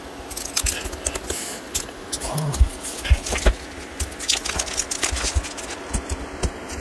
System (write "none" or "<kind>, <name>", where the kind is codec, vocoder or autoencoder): none